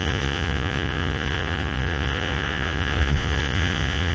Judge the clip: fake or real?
fake